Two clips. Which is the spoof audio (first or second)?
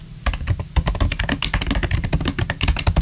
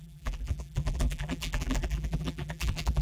second